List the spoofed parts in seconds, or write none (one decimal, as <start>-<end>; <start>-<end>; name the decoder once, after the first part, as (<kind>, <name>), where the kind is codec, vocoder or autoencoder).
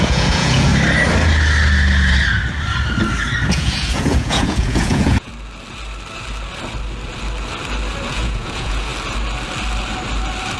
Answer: 0.0-0.7 (vocoder, Vocos); 3.5-5.3; 8.1-8.9